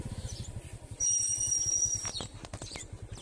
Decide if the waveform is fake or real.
fake